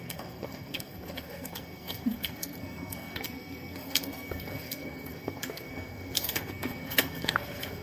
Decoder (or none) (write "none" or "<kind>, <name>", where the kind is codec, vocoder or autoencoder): codec, SNAC